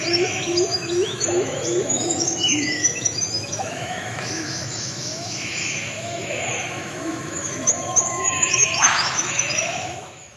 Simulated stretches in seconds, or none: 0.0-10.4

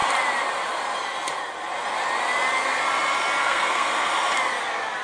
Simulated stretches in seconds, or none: 3.4-4.1